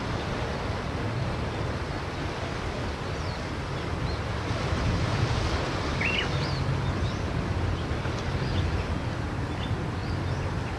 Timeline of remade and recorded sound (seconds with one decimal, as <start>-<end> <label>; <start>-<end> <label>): 0.0-10.8 recorded